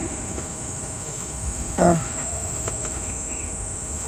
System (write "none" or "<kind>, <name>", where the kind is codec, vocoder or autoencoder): autoencoder, DAC-VAE